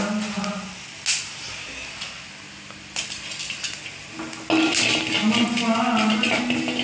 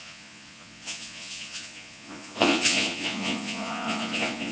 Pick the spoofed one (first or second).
second